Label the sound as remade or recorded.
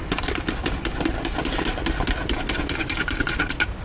recorded